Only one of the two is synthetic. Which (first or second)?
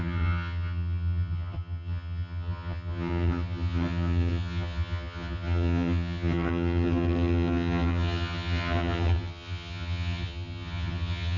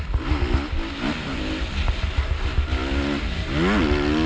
first